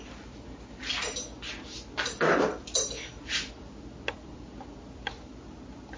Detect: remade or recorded recorded